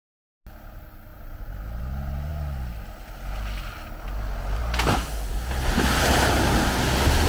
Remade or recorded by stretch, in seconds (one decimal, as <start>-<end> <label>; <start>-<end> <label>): 0.0-7.3 recorded